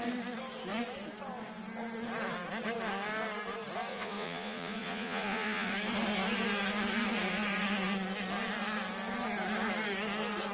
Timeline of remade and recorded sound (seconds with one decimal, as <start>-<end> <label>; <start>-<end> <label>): 0.0-3.9 recorded; 3.9-5.7 remade; 5.7-10.5 recorded